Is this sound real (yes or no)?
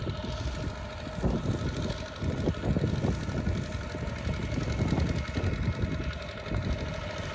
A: yes